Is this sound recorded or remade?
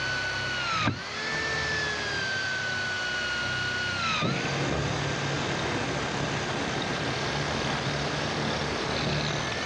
recorded